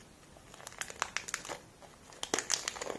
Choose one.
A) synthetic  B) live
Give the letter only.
B